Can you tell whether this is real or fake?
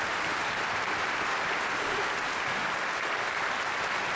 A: real